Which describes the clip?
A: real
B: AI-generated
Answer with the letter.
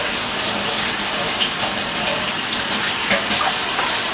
B